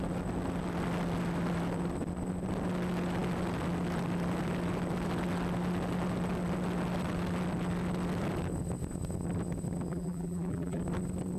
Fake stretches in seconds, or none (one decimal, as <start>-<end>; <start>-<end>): 9.9-10.8